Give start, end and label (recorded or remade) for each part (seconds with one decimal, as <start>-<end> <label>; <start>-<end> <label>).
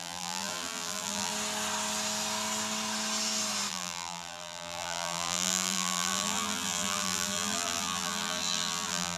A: 0.0-1.3 remade; 1.3-3.7 recorded; 3.7-9.2 remade